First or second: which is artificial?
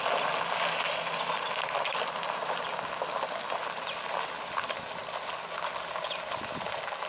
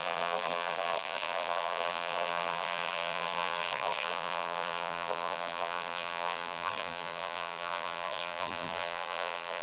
second